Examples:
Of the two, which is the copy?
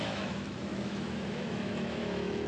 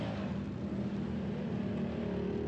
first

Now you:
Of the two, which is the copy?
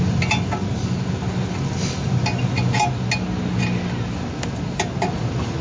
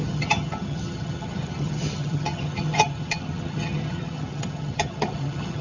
second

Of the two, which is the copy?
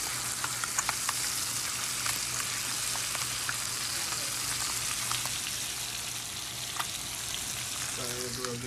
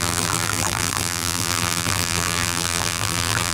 second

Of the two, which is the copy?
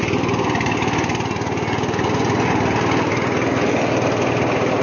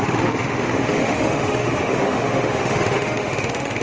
second